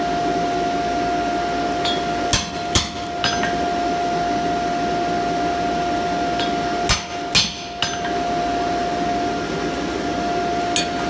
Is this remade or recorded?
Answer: recorded